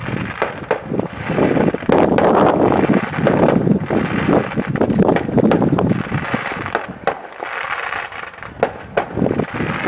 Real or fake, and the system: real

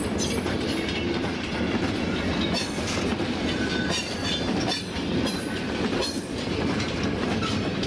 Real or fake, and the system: real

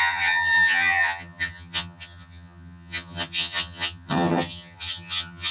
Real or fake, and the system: fake, vocoder, HiFi-GAN